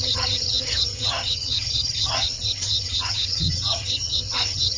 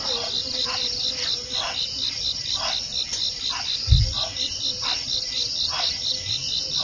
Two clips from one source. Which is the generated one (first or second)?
first